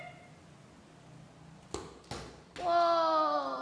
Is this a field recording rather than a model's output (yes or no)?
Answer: yes